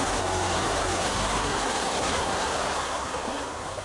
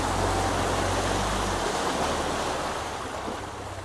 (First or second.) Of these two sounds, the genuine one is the second